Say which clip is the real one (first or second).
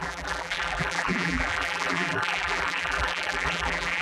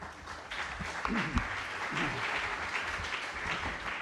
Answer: second